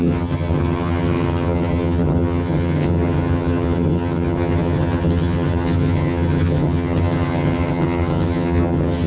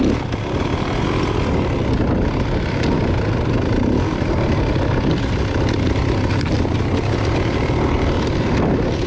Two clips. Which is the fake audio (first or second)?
first